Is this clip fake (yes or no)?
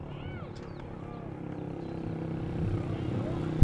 no